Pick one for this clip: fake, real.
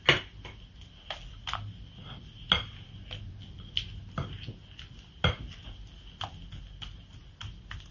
real